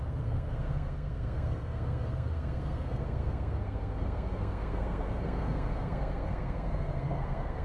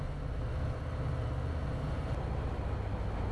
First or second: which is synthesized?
first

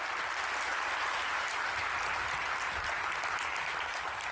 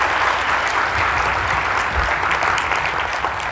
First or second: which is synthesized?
first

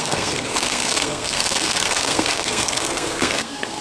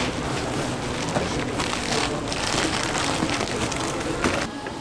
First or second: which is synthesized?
first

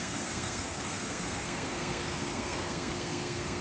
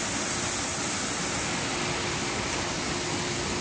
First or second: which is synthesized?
first